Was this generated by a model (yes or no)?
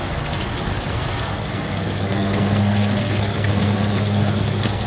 yes